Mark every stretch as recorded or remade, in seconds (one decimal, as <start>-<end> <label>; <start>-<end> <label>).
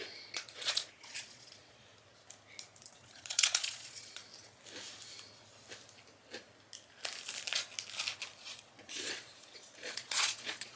0.0-1.9 remade; 1.9-2.8 recorded; 2.8-4.2 remade; 4.2-8.4 recorded; 8.4-10.8 remade